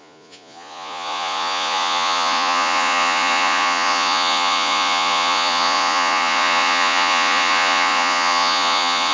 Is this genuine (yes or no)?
no